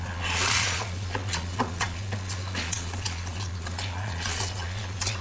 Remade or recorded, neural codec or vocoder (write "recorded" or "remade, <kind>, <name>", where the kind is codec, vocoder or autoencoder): remade, vocoder, Vocos